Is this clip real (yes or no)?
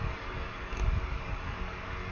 no